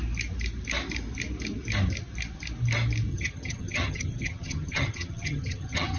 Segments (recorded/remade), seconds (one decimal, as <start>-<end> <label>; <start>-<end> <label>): 0.0-3.1 recorded; 3.1-6.0 remade